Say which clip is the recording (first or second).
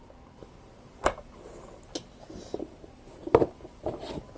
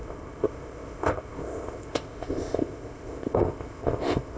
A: first